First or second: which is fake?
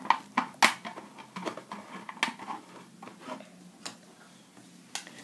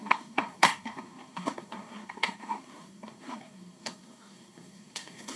second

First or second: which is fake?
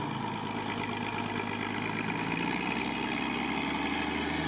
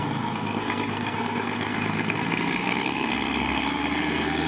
second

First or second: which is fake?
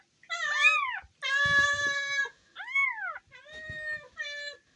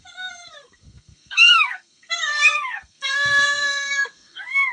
second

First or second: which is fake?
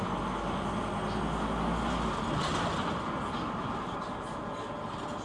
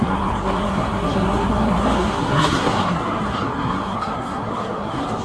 second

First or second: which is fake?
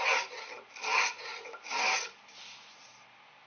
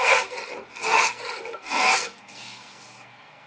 second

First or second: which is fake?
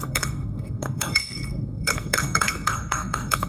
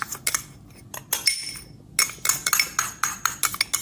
first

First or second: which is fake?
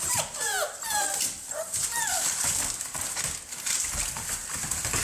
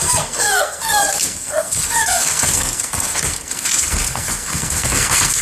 second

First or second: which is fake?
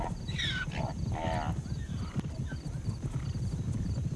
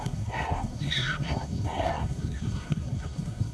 second